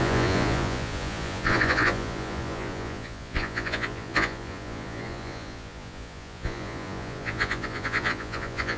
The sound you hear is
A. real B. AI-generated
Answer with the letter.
B